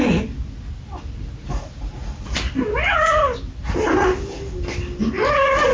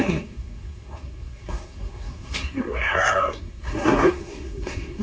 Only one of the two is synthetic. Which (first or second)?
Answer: second